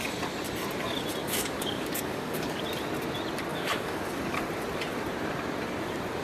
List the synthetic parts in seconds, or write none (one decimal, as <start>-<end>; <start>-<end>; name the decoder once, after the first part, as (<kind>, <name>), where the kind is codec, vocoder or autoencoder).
1.2-2.6 (codec, DAC); 3.5-4.4

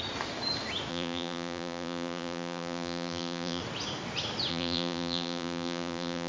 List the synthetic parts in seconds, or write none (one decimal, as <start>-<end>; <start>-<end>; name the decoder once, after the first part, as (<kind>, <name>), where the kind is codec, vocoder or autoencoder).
0.9-3.6 (vocoder, BigVGAN v2); 4.5-6.3

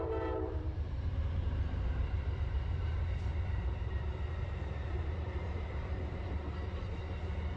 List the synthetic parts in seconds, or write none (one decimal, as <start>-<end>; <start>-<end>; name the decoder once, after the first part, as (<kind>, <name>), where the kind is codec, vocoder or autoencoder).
0.0-7.6 (vocoder, BigVGAN v2)

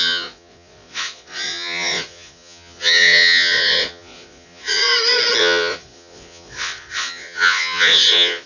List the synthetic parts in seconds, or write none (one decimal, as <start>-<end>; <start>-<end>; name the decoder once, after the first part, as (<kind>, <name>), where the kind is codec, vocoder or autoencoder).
0.0-4.8 (vocoder, Vocos); 5.4-8.5

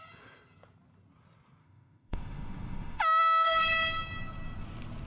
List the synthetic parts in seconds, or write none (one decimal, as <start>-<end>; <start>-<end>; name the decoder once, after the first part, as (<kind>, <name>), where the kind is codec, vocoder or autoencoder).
1.6-3.6 (autoencoder, DAC-VAE)

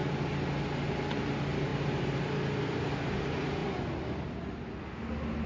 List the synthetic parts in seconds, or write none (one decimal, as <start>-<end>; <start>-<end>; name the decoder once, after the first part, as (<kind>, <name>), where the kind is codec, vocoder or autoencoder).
none

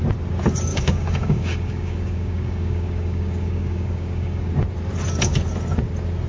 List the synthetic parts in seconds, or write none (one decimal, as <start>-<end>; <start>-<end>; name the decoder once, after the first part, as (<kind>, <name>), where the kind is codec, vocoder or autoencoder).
0.7-4.5 (codec, DAC)

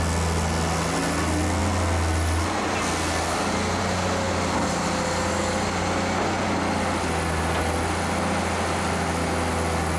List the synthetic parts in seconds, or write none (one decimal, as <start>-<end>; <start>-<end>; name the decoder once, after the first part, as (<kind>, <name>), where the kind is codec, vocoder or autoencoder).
none